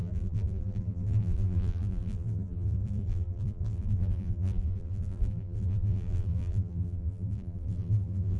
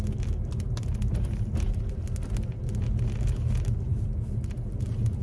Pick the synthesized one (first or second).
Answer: first